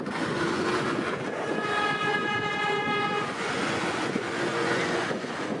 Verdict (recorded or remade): remade